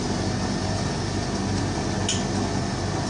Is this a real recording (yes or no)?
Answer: yes